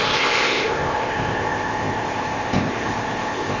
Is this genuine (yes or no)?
no